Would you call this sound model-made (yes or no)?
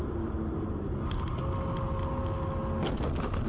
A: no